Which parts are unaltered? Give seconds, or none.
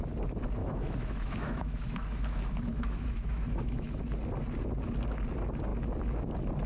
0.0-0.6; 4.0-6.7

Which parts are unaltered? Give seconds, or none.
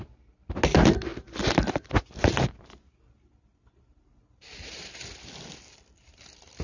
0.0-6.6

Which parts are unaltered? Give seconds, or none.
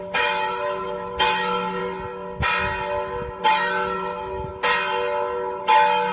1.8-3.4; 4.5-5.6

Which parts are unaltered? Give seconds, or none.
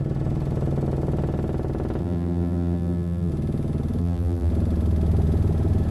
0.0-2.0; 3.3-4.0; 4.5-5.9